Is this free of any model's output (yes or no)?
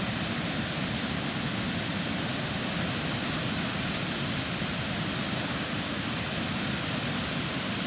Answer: yes